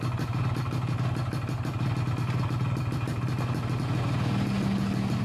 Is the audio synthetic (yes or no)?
no